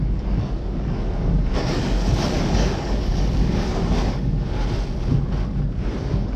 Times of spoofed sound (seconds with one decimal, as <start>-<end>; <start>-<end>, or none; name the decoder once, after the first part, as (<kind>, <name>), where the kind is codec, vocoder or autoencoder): 0.0-4.6 (codec, DAC); 6.0-6.4